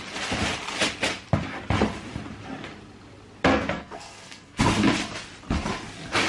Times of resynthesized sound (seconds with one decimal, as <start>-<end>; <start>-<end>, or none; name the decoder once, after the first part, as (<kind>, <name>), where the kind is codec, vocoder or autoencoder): 3.5-4.6 (codec, SNAC)